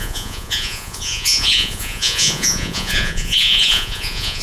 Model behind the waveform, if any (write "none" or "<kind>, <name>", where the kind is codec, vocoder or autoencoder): vocoder, Vocos